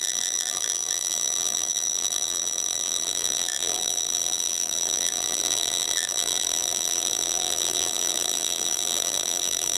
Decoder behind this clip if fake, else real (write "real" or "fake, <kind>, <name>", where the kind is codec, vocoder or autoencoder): fake, vocoder, BigVGAN v2